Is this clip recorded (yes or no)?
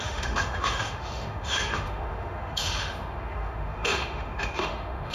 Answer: no